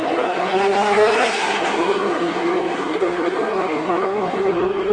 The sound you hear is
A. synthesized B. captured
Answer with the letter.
A